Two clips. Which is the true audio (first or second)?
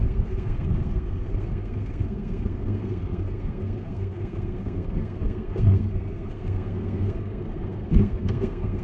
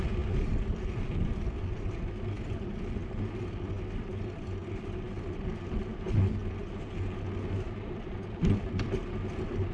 second